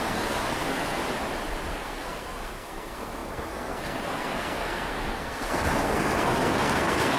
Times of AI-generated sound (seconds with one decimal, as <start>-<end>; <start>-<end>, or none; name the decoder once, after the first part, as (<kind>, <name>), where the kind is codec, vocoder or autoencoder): 0.0-1.0 (codec, SNAC); 1.7-7.2